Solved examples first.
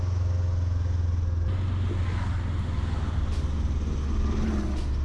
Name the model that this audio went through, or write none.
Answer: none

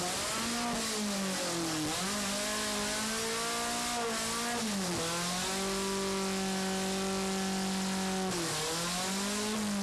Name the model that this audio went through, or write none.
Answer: none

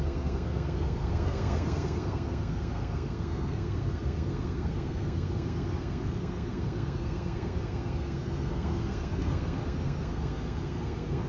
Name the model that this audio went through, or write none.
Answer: codec, SNAC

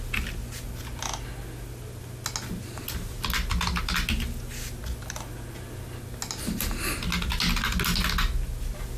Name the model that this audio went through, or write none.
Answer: none